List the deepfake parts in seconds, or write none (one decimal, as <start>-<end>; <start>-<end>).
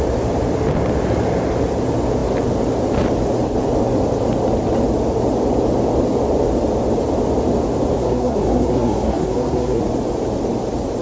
8.0-9.8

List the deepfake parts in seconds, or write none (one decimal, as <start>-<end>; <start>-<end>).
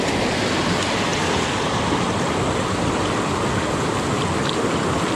none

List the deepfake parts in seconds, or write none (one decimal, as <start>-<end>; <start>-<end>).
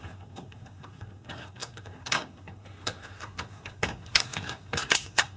0.0-5.4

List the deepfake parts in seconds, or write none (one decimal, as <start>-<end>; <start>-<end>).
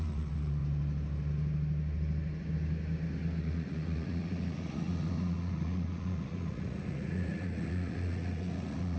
0.0-0.6; 3.4-9.0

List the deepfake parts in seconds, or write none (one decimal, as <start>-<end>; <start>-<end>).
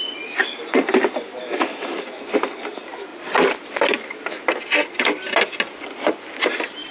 1.4-2.2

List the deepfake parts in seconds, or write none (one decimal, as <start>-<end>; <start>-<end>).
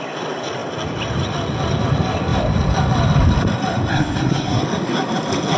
3.9-4.6